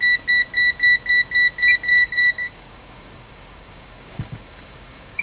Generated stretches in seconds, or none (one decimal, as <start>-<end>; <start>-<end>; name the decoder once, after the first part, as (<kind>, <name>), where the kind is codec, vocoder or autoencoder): 1.9-5.2 (codec, DAC)